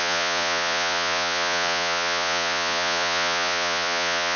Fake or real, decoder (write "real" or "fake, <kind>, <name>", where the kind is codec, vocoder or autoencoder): fake, vocoder, Vocos